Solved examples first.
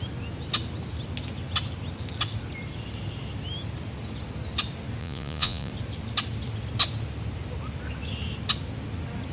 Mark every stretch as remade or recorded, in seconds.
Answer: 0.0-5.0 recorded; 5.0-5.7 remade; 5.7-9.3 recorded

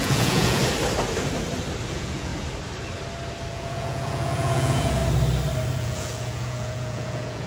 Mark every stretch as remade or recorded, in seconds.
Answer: 0.0-0.6 remade; 0.6-1.9 recorded; 1.9-2.3 remade; 2.3-3.5 recorded; 3.5-5.0 remade; 5.0-5.8 recorded; 5.8-7.5 remade